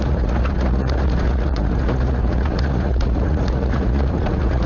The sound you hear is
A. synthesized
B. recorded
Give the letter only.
A